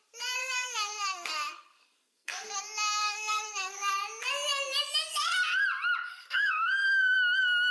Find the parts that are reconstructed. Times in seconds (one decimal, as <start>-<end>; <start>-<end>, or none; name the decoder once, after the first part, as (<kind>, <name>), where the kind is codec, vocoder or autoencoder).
0.4-2.6 (codec, SNAC); 3.0-3.9; 6.1-6.7